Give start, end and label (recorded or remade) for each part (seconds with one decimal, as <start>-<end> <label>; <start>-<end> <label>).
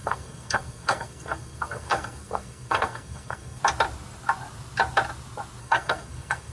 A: 0.0-3.6 remade; 3.6-5.6 recorded; 5.6-6.5 remade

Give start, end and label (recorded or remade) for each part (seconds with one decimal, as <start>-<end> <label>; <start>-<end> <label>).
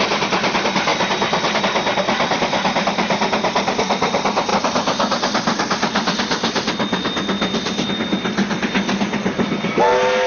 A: 0.0-10.3 recorded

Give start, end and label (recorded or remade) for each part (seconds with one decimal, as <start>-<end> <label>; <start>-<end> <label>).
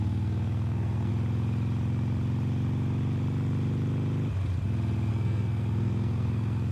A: 0.0-1.1 remade; 1.1-5.1 recorded; 5.1-6.7 remade